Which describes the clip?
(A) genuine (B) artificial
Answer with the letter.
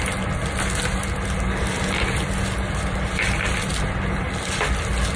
A